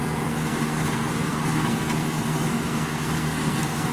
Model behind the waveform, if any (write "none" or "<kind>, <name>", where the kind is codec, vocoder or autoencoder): codec, SNAC